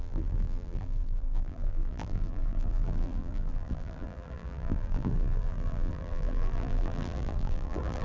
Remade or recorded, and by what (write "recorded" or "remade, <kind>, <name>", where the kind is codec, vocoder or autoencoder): remade, vocoder, BigVGAN v2